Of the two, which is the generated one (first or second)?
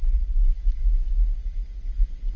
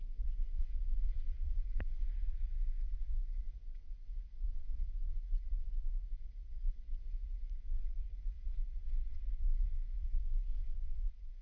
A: second